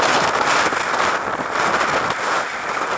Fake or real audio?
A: real